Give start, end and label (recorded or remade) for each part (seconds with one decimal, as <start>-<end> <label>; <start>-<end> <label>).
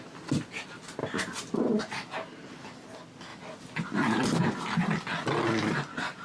0.0-6.2 recorded